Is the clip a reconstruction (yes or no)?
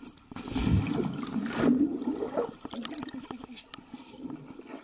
no